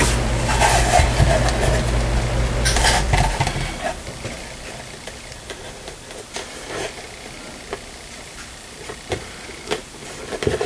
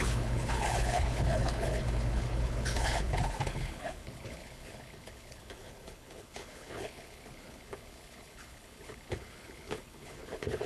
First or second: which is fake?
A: second